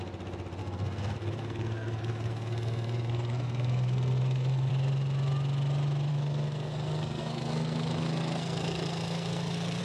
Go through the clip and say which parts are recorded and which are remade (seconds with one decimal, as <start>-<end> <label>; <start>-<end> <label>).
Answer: 0.0-0.6 recorded; 0.6-4.7 remade; 4.7-6.1 recorded; 6.1-9.8 remade